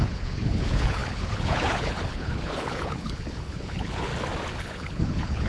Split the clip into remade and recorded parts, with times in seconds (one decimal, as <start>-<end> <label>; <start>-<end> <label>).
0.0-4.1 remade; 4.1-4.6 recorded; 4.6-5.5 remade